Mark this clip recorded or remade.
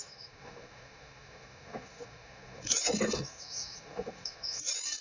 remade